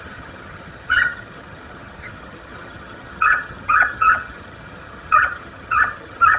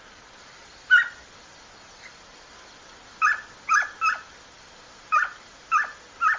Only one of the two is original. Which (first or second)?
second